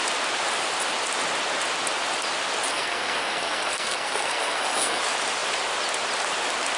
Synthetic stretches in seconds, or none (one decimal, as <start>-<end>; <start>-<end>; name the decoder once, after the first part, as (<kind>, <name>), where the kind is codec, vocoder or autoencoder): 2.7-5.0 (codec, SNAC)